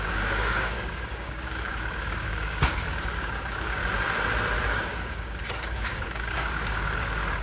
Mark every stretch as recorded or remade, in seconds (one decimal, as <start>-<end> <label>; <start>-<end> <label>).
0.0-3.8 remade; 3.8-4.6 recorded; 4.6-7.4 remade